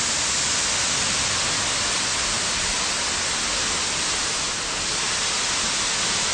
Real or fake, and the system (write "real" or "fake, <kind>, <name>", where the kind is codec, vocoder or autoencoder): real